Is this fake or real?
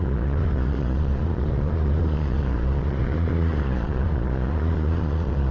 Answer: fake